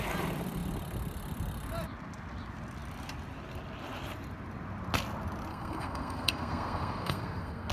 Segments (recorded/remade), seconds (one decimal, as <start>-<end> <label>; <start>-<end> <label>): 0.0-5.5 recorded; 5.5-7.7 remade